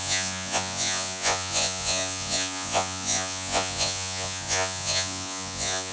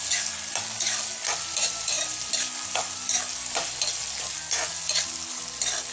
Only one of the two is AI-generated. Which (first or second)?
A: first